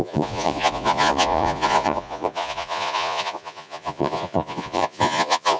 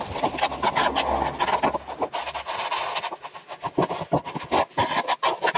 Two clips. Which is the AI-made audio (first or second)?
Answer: first